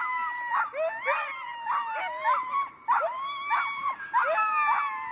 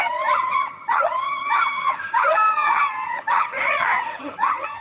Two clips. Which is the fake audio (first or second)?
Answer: second